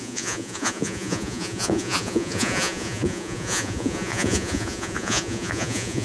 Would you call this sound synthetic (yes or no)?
yes